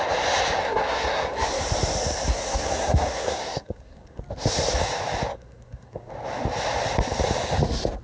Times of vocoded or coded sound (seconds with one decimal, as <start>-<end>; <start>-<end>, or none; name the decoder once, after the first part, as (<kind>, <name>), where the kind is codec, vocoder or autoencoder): 0.6-1.6 (codec, SNAC); 2.3-4.2; 5.3-6.1